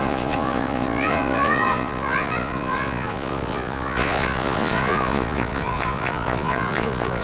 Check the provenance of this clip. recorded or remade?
remade